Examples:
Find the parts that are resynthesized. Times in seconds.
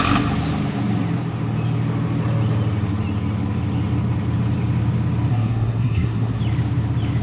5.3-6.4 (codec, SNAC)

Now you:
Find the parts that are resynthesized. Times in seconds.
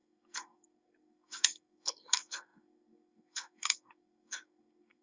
0.0-5.0 (codec, SNAC)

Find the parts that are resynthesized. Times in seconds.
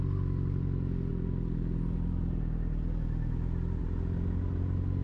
none